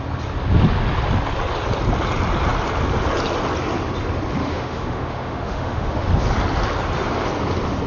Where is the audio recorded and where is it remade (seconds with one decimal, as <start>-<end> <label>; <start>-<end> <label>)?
0.0-4.4 recorded; 4.4-6.1 remade; 6.1-7.9 recorded